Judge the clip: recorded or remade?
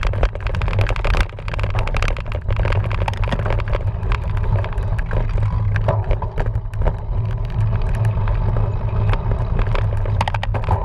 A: recorded